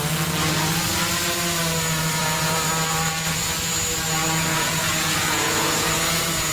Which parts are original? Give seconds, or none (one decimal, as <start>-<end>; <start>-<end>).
0.0-2.2; 2.7-4.5